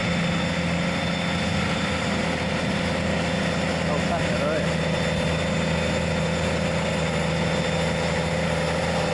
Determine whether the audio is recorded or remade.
recorded